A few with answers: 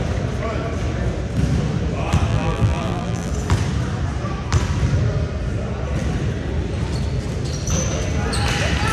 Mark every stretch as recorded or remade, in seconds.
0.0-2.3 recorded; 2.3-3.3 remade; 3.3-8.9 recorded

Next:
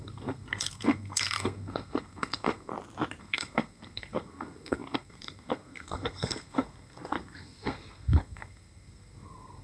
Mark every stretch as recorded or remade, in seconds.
0.0-2.7 remade; 2.7-3.2 recorded; 3.2-9.6 remade

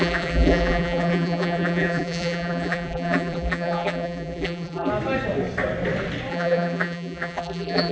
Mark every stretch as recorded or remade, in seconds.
0.0-4.9 remade; 4.9-6.3 recorded; 6.3-7.9 remade

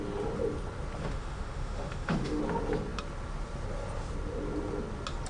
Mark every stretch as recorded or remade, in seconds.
0.0-1.0 recorded; 1.0-2.4 remade; 2.4-5.3 recorded

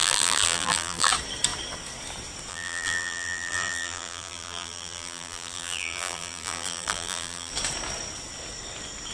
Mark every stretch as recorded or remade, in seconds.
0.0-1.1 remade; 1.1-2.5 recorded; 2.5-7.5 remade; 7.5-9.1 recorded

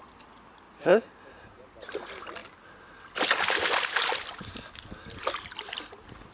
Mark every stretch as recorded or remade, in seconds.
0.0-0.9 recorded; 0.9-1.6 remade; 1.6-6.3 recorded